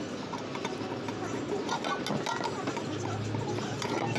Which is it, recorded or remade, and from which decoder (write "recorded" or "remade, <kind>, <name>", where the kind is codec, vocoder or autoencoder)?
recorded